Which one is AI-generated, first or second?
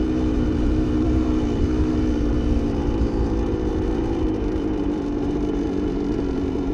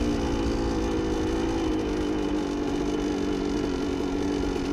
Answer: first